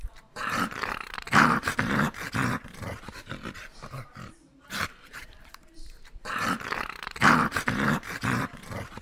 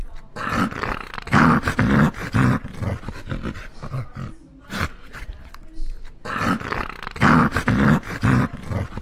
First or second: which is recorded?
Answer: second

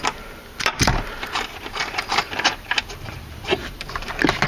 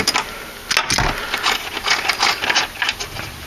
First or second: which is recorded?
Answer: second